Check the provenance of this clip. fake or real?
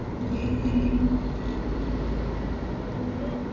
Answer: real